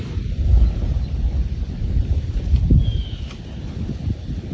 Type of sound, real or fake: real